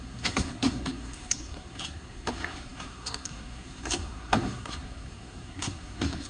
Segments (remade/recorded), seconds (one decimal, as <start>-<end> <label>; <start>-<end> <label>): 0.0-6.3 remade